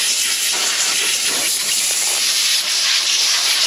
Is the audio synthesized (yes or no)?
yes